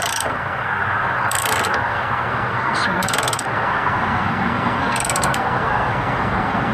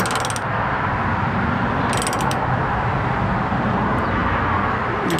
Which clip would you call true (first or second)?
second